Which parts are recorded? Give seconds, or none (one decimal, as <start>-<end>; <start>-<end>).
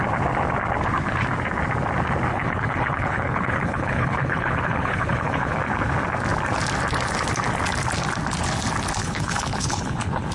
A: 0.0-2.3; 5.6-9.0